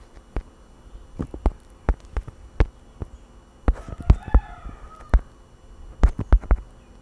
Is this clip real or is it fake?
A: real